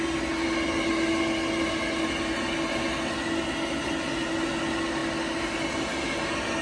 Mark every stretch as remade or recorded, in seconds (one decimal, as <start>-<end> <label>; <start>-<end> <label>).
0.0-6.6 recorded